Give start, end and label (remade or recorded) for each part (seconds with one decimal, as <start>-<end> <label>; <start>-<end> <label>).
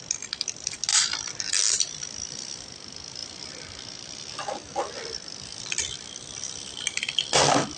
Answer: 0.0-7.8 recorded